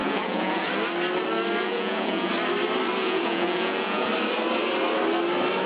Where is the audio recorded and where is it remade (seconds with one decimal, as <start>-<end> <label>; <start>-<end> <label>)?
0.0-0.7 remade; 0.7-1.6 recorded; 1.6-2.3 remade; 2.3-3.0 recorded; 3.0-4.1 remade; 4.1-5.7 recorded